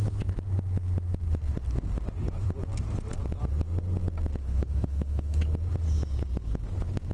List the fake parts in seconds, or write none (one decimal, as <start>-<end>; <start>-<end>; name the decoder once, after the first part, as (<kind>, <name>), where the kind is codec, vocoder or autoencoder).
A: 4.4-5.4 (autoencoder, DAC-VAE)